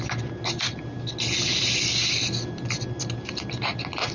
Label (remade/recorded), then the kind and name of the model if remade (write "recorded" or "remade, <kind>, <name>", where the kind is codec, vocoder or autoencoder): recorded